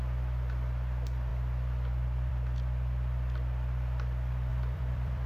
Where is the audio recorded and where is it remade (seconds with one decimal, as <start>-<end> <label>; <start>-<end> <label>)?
0.0-4.5 recorded; 4.5-5.3 remade